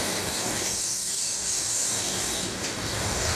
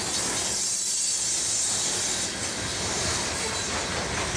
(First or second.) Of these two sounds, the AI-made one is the first